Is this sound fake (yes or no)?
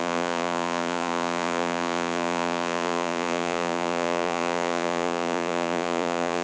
yes